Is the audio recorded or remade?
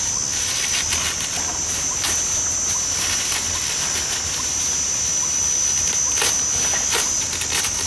recorded